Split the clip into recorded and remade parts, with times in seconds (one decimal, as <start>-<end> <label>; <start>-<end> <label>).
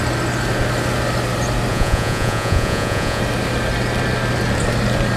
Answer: 0.0-1.7 recorded; 1.7-3.2 remade; 3.2-5.2 recorded